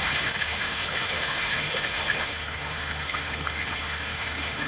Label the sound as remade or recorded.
remade